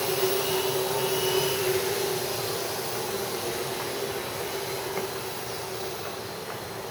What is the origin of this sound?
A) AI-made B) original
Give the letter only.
B